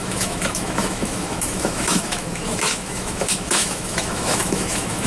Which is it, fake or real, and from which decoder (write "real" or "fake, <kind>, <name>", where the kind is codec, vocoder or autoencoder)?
fake, autoencoder, DAC-VAE